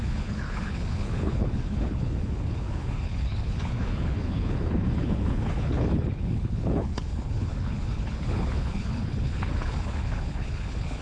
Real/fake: fake